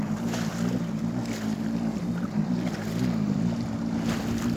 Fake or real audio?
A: real